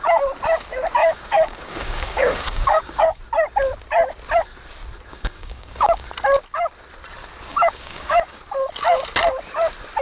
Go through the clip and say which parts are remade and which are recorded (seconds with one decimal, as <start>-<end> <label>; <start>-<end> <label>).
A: 0.0-1.0 recorded; 1.0-3.2 remade; 3.2-5.1 recorded; 5.1-6.1 remade; 6.1-7.5 recorded; 7.5-8.4 remade; 8.4-10.0 recorded

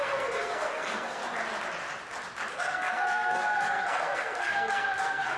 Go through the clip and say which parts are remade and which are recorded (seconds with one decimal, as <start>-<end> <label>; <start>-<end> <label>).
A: 0.0-1.2 remade; 1.2-2.5 recorded; 2.5-5.4 remade

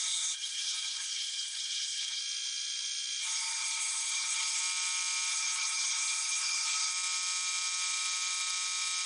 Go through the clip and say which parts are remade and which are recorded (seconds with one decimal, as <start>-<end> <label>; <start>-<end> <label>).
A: 0.0-2.2 remade; 2.2-3.2 recorded; 3.2-4.6 remade; 4.6-5.3 recorded; 5.3-6.9 remade; 6.9-9.1 recorded

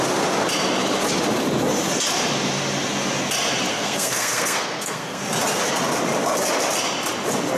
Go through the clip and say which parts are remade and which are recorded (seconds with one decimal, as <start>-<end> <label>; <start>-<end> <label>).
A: 0.0-3.7 recorded; 3.7-5.2 remade; 5.2-7.6 recorded